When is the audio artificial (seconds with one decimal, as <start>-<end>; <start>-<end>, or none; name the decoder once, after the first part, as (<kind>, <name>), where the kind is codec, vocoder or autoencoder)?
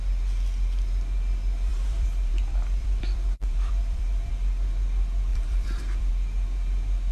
1.7-4.3 (vocoder, BigVGAN v2); 5.3-6.1